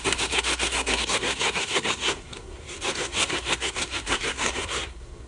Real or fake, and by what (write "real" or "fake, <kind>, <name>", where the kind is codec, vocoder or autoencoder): fake, codec, SNAC